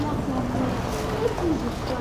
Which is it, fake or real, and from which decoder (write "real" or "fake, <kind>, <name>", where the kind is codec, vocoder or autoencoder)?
real